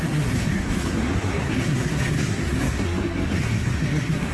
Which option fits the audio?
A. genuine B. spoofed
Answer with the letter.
B